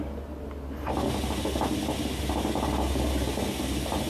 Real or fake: fake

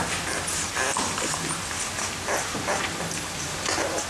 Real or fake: fake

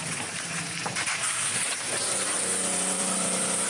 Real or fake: fake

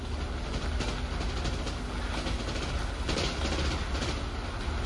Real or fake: real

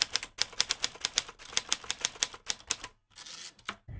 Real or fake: real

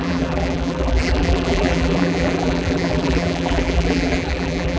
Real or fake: fake